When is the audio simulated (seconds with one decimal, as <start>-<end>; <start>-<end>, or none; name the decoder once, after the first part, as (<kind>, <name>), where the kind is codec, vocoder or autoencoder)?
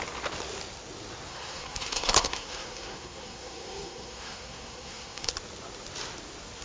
1.3-5.3 (codec, SNAC)